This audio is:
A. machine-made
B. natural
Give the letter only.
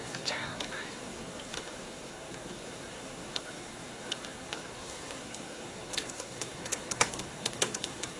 A